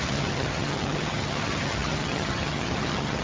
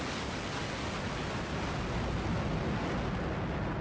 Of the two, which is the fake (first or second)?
first